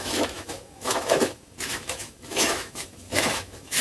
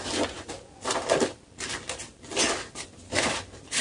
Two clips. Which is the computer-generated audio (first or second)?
first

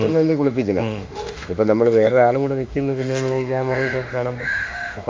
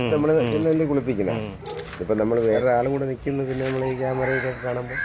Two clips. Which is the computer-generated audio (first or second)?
first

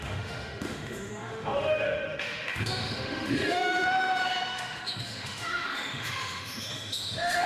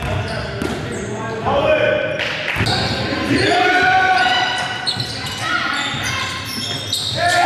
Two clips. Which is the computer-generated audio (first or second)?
first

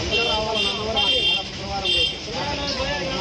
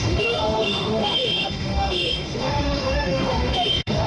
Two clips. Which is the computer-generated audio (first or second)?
second